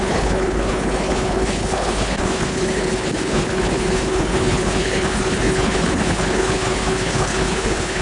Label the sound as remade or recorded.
remade